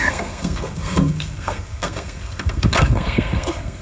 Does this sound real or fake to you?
fake